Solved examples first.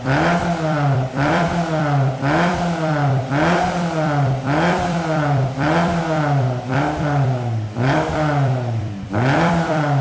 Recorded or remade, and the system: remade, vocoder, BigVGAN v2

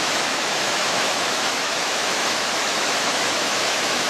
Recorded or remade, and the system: remade, autoencoder, DAC-VAE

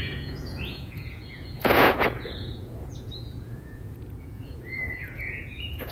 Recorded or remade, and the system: remade, vocoder, Vocos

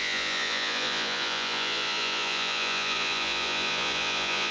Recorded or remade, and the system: remade, vocoder, Vocos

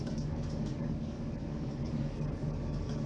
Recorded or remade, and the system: remade, codec, DAC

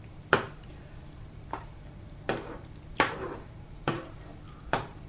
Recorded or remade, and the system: remade, vocoder, BigVGAN v2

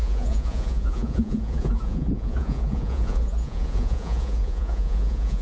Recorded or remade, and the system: remade, vocoder, Vocos